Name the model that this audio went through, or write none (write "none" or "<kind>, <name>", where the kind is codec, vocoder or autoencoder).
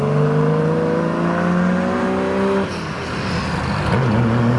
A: none